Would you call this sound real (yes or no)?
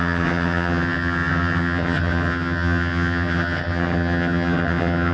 no